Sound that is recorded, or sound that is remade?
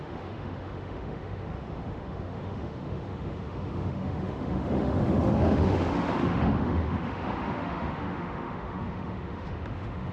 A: remade